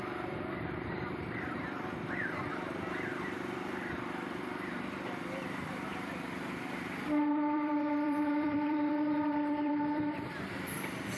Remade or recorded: remade